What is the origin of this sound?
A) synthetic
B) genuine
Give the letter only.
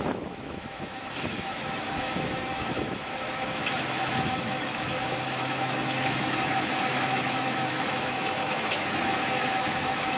A